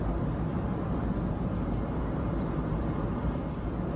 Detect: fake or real real